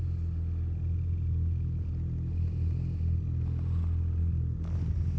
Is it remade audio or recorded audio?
recorded